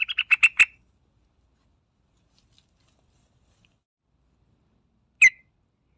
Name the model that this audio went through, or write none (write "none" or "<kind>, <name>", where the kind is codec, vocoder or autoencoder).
none